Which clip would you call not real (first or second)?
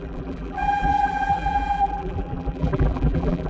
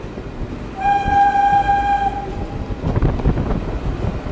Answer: first